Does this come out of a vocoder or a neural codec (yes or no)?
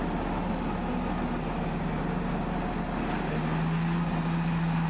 no